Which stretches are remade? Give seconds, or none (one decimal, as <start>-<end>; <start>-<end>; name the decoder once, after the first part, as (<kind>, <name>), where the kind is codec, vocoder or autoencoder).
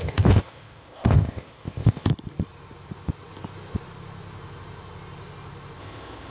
0.0-2.1 (codec, ZipCodec); 5.8-6.3